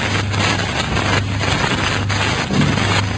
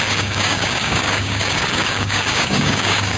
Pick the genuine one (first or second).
first